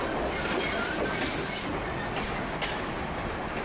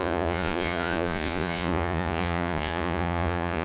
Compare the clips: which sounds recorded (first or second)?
first